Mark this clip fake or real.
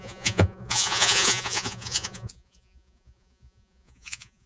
fake